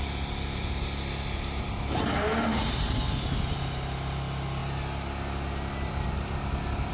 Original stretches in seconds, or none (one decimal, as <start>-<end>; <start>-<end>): 0.0-6.9